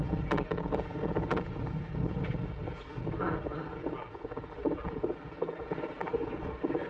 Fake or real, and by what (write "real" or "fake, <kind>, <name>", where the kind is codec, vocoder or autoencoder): real